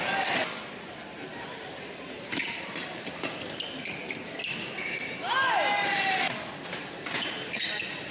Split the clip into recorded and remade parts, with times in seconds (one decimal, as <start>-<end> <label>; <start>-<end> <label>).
0.0-1.3 recorded; 1.3-4.3 remade; 4.3-8.1 recorded